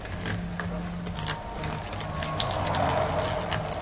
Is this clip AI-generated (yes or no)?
no